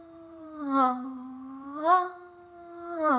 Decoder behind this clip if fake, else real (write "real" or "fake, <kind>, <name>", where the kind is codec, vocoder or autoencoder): fake, vocoder, BigVGAN v2